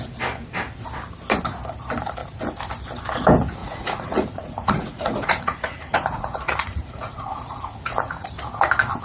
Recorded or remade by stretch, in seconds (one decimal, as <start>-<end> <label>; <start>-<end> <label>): 0.0-3.6 recorded; 3.6-8.3 remade; 8.3-9.0 recorded